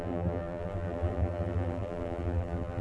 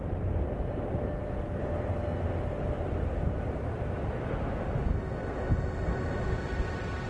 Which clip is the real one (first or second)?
second